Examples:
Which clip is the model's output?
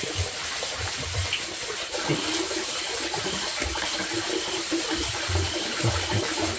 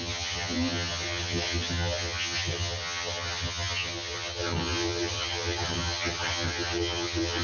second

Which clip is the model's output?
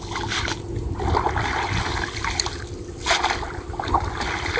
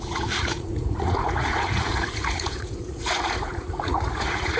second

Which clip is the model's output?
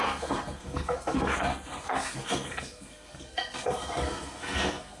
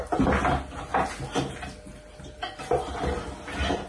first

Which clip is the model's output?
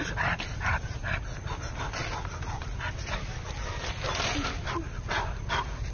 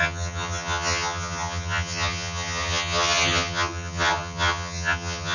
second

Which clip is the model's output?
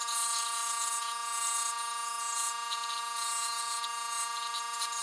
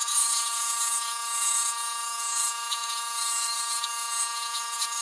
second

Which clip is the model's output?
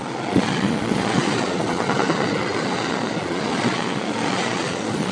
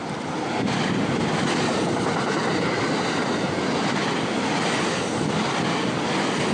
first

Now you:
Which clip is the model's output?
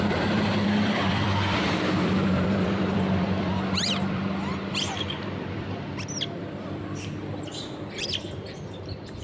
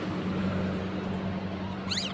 first